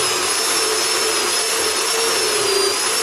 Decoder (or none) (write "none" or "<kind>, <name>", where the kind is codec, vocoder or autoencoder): none